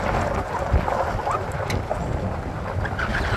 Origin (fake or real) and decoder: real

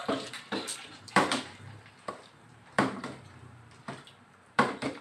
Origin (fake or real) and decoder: fake, vocoder, BigVGAN v2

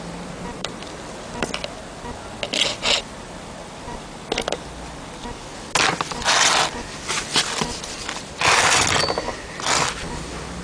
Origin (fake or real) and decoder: real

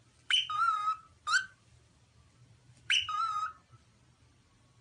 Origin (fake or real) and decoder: fake, vocoder, BigVGAN v2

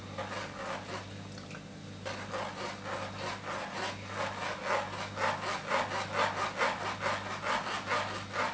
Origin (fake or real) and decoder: real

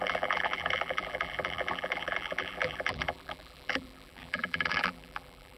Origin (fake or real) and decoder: fake, vocoder, BigVGAN v2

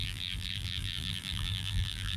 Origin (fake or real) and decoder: fake, vocoder, BigVGAN v2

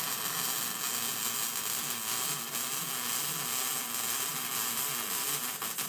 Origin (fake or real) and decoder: real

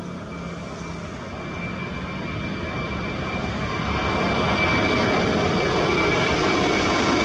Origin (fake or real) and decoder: real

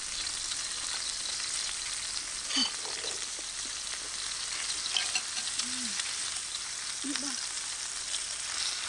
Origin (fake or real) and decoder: real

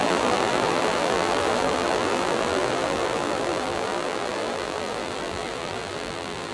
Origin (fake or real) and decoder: fake, vocoder, BigVGAN v2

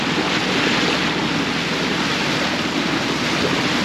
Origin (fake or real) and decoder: real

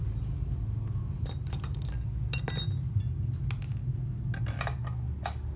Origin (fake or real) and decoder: real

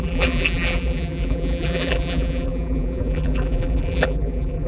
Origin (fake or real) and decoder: fake, vocoder, BigVGAN v2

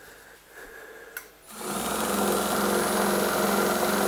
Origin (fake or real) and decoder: real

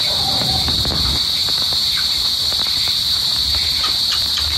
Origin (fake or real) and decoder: fake, vocoder, BigVGAN v2